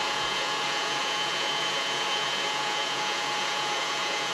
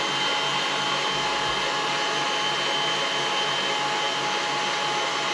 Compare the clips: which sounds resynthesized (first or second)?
first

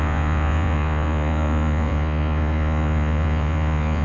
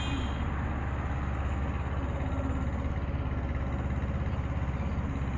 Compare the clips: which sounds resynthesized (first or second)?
first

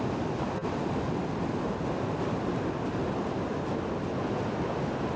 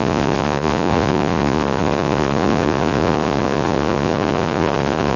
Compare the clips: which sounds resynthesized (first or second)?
second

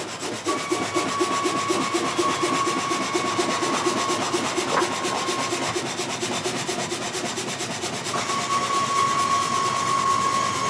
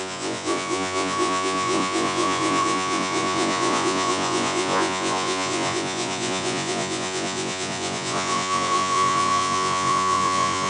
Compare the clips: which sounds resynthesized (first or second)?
second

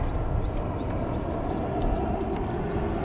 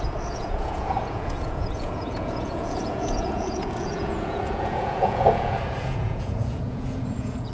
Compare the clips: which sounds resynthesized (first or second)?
second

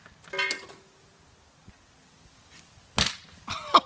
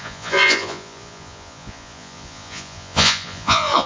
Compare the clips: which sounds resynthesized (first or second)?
second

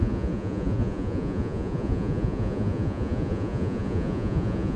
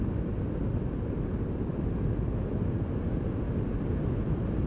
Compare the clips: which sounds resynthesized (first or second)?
first